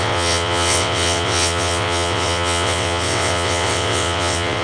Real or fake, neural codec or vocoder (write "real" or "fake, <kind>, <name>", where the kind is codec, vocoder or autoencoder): fake, vocoder, WaveNeXt